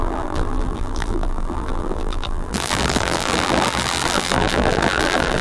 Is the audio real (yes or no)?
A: no